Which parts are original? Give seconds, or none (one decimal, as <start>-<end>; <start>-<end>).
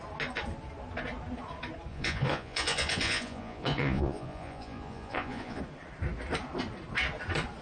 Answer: 0.0-1.9; 5.6-7.6